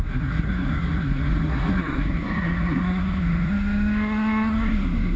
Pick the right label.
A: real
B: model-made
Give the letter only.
B